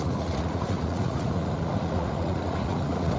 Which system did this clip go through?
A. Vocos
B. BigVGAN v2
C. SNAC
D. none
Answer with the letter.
A